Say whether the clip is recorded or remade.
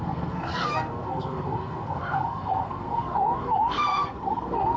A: remade